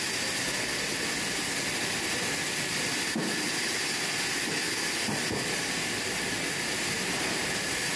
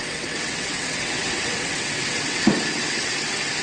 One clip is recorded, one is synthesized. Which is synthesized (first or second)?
second